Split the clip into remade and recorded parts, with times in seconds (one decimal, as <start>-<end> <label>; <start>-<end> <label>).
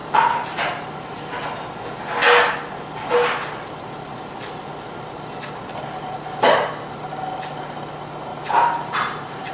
0.0-1.2 remade; 1.2-8.3 recorded; 8.3-9.5 remade